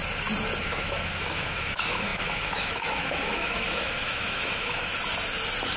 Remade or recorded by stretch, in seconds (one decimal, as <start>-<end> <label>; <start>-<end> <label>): 0.0-0.6 recorded; 0.6-4.9 remade; 4.9-5.8 recorded

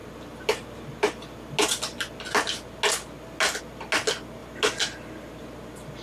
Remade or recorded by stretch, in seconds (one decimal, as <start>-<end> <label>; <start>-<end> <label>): 0.0-6.0 recorded

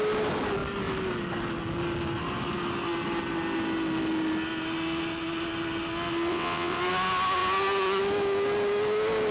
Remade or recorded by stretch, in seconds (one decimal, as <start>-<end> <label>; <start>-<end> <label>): 0.0-6.3 recorded; 6.3-6.8 remade; 6.8-9.3 recorded

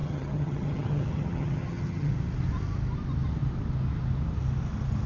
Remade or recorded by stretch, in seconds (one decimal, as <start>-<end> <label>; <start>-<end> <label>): 0.0-2.1 remade; 2.1-5.1 recorded

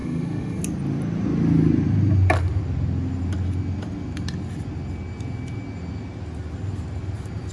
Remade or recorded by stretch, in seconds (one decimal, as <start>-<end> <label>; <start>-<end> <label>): 0.0-0.6 remade; 0.6-7.5 recorded

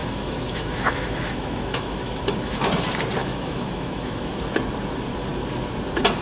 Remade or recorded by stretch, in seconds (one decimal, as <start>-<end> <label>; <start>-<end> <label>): 0.0-2.6 remade; 2.6-3.2 recorded; 3.2-4.3 remade; 4.3-6.2 recorded

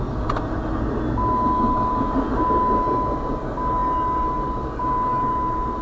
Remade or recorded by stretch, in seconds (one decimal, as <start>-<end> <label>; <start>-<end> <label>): 0.0-5.8 recorded

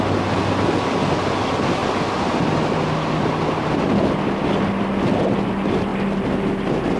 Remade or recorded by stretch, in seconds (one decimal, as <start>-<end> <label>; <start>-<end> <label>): 0.0-7.0 recorded